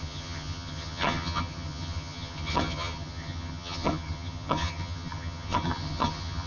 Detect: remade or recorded remade